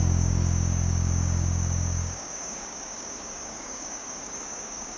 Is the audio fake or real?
fake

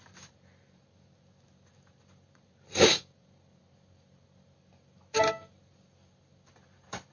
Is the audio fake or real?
real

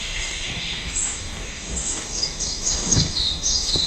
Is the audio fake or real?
fake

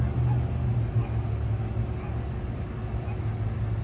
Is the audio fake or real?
real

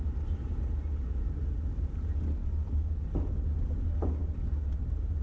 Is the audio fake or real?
real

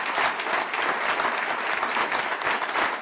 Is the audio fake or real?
real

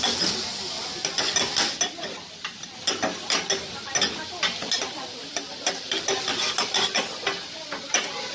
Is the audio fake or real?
real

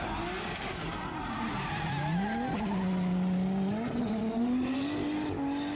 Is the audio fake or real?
real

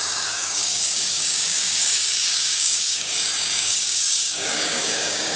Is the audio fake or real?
fake